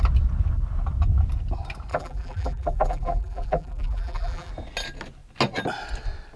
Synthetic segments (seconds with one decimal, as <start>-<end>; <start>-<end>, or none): 1.9-4.5